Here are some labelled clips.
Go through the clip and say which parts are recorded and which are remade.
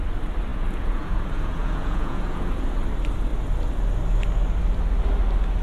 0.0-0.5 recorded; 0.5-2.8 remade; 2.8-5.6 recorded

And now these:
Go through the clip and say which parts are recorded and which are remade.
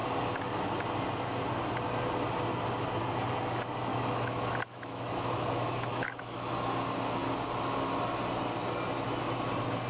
0.0-3.9 recorded; 3.9-6.5 remade; 6.5-9.9 recorded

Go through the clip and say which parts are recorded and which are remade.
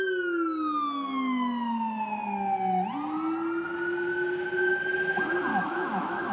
0.0-5.5 recorded; 5.5-6.3 remade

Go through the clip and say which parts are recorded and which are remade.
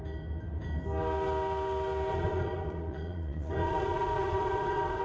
0.0-2.1 recorded; 2.1-5.0 remade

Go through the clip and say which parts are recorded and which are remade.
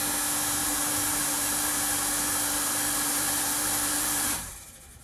0.0-0.6 recorded; 0.6-1.7 remade; 1.7-3.1 recorded; 3.1-4.6 remade; 4.6-5.0 recorded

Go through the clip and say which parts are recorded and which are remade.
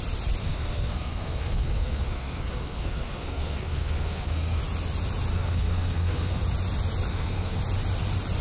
0.0-0.4 recorded; 0.4-4.6 remade; 4.6-5.3 recorded; 5.3-6.4 remade; 6.4-7.1 recorded; 7.1-7.6 remade; 7.6-8.4 recorded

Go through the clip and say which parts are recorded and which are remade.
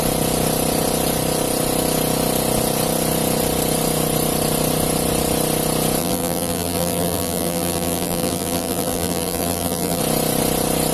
0.0-6.0 recorded; 6.0-10.0 remade; 10.0-10.9 recorded